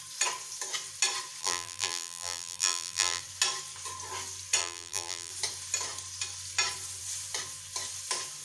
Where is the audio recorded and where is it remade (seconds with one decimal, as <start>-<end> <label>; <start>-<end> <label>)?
0.0-1.4 recorded; 1.4-3.2 remade; 3.2-4.6 recorded; 4.6-5.3 remade; 5.3-8.4 recorded